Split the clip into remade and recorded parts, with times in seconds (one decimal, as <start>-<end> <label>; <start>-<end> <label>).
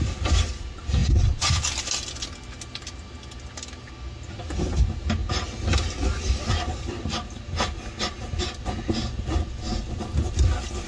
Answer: 0.0-10.9 recorded